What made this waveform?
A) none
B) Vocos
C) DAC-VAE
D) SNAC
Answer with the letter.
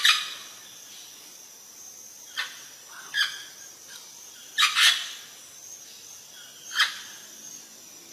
A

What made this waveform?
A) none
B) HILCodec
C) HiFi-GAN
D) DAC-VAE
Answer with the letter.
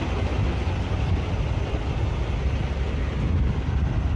A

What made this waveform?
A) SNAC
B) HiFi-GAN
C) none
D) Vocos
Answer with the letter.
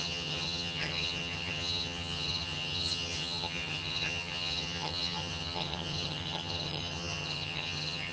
B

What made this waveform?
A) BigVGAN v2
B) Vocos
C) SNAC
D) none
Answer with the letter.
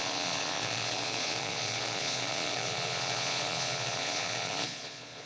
B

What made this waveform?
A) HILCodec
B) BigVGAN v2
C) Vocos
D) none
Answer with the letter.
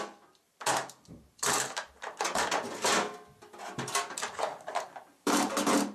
D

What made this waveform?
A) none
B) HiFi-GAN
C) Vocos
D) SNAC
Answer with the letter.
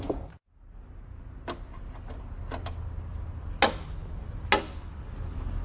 A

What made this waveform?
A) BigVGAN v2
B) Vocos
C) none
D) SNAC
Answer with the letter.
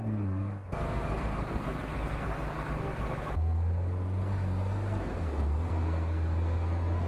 D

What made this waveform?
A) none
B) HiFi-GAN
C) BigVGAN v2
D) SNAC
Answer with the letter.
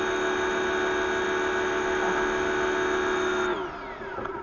A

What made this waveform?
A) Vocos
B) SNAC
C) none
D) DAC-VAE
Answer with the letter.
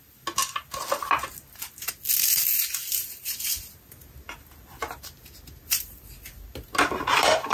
C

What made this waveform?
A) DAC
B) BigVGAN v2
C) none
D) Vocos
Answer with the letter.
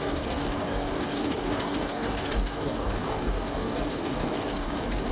A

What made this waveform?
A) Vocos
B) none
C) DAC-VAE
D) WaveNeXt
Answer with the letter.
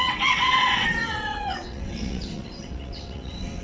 D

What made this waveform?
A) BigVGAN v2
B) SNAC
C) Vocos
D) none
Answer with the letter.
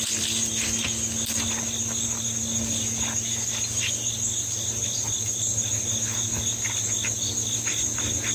D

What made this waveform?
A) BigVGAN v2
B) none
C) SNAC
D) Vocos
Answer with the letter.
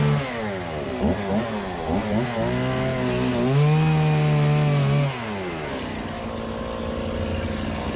B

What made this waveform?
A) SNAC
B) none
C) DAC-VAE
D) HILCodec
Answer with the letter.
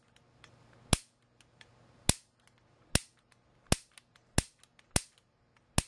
B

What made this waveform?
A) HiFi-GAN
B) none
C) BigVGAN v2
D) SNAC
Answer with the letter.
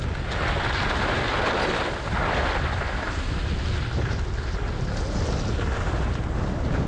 B